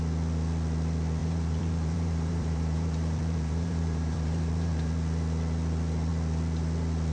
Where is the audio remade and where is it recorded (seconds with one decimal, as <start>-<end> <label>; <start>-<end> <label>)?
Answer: 0.0-1.2 recorded; 1.2-4.9 remade; 4.9-7.1 recorded

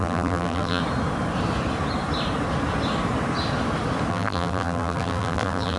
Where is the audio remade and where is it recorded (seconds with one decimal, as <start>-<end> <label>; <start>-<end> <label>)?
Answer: 0.0-0.8 remade; 0.8-4.1 recorded; 4.1-5.8 remade

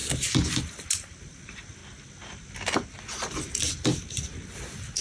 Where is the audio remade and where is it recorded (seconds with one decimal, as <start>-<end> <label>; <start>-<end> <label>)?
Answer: 0.0-1.3 recorded; 1.3-1.8 remade; 1.8-5.0 recorded

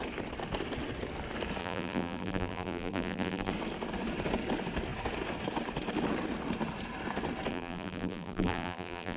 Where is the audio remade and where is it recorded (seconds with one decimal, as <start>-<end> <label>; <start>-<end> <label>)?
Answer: 0.0-1.6 recorded; 1.6-3.5 remade; 3.5-7.5 recorded; 7.5-9.2 remade

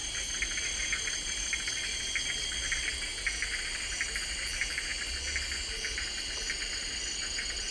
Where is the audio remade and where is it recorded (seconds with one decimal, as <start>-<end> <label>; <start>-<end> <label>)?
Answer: 0.0-7.7 recorded

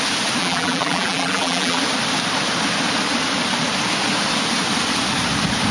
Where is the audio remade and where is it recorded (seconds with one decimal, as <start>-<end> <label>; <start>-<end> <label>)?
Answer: 0.0-0.4 recorded; 0.4-1.8 remade; 1.8-5.7 recorded